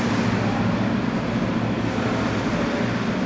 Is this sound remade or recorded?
recorded